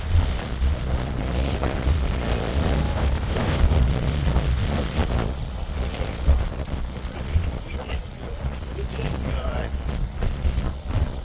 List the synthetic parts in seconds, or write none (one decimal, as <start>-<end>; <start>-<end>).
0.0-2.8; 3.6-11.2